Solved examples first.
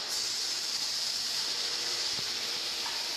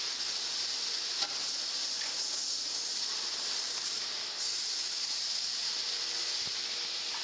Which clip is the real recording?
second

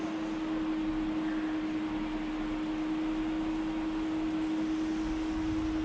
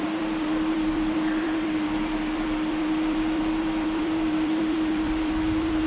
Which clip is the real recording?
first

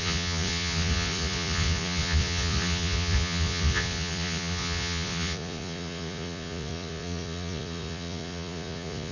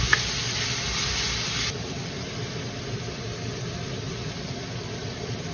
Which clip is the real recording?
second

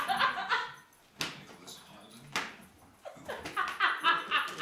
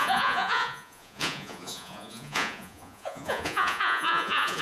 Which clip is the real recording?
first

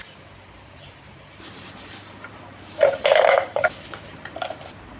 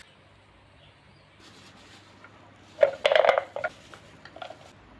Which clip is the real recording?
second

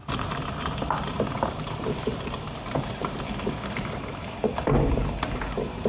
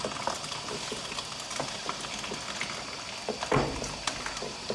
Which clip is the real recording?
second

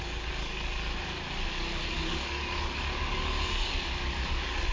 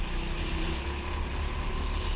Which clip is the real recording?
second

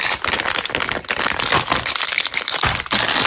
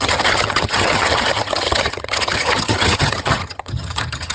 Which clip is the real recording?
first